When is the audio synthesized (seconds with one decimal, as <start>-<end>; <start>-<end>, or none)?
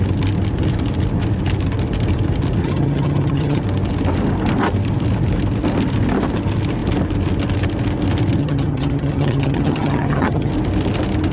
2.6-3.6; 8.4-10.5